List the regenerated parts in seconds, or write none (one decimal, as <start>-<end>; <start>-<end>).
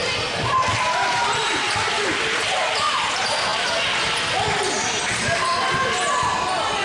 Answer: none